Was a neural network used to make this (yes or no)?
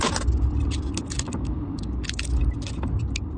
no